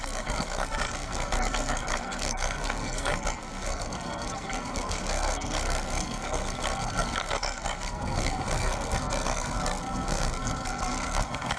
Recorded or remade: remade